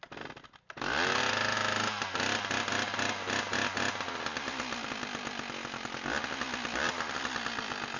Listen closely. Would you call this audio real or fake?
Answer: real